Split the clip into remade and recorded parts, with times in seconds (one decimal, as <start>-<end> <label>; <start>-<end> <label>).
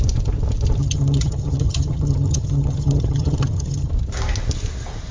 0.0-0.8 recorded; 0.8-3.9 remade; 3.9-5.1 recorded